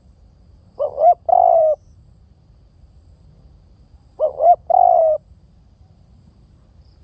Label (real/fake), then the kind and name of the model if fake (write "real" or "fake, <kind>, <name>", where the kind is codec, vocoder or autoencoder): fake, vocoder, BigVGAN v2